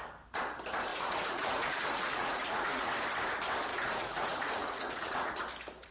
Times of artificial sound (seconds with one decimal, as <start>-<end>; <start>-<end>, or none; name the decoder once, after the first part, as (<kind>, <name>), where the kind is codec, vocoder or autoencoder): 0.9-2.9 (vocoder, Vocos); 3.7-5.3

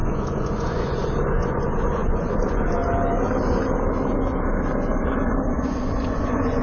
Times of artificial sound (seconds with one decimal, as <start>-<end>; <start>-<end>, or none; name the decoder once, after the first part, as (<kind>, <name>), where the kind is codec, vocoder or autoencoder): 0.0-2.8 (vocoder, Vocos); 5.5-6.6

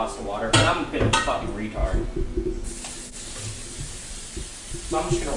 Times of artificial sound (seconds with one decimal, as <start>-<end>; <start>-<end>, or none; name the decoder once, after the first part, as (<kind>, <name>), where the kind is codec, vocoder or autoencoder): 1.8-2.7 (vocoder, Vocos)

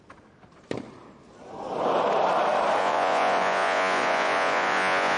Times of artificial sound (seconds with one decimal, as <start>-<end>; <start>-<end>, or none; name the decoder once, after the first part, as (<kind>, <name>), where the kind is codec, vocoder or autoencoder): 2.8-5.2 (vocoder, Vocos)

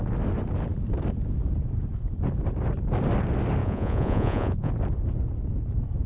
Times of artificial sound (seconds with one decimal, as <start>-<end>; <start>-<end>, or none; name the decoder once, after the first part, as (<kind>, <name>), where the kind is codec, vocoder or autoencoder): 3.6-4.7 (vocoder, Vocos)

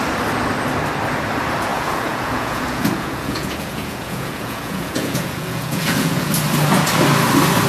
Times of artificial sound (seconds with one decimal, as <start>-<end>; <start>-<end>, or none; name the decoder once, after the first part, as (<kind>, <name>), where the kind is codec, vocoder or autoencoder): 1.7-6.3 (vocoder, Vocos)